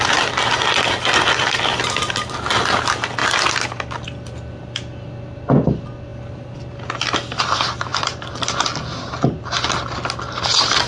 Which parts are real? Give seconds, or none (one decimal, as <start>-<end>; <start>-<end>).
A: 0.0-10.9